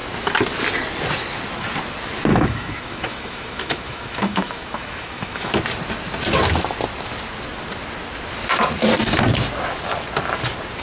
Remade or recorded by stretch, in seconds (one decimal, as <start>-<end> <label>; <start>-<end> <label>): 0.0-2.3 recorded; 2.3-5.5 remade; 5.5-10.8 recorded

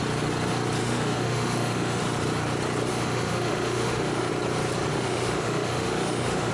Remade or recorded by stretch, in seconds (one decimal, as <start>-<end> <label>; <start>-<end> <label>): 0.0-0.8 recorded; 0.8-2.0 remade; 2.0-2.9 recorded; 2.9-4.3 remade; 4.3-4.9 recorded; 4.9-6.5 remade

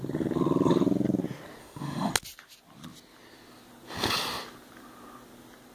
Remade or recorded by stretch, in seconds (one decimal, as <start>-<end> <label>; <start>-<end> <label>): 0.0-1.6 recorded; 1.6-2.1 remade; 2.1-5.7 recorded